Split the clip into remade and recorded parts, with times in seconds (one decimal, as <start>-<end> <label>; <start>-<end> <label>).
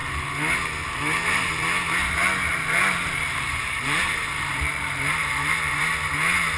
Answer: 0.0-2.5 recorded; 2.5-5.8 remade; 5.8-6.6 recorded